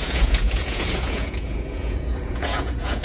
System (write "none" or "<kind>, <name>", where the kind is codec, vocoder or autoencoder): vocoder, Vocos